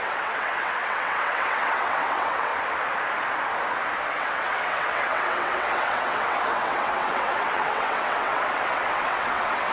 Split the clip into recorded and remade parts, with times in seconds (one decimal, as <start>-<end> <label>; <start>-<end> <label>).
0.0-2.5 remade; 2.5-4.1 recorded; 4.1-9.7 remade